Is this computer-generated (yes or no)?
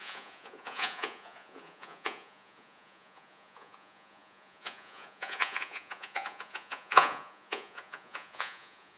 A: yes